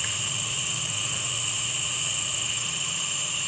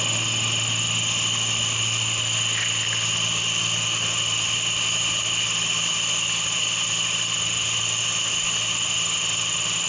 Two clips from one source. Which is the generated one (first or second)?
first